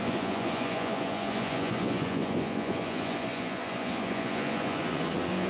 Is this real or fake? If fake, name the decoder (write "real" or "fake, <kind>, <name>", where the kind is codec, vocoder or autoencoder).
fake, vocoder, Vocos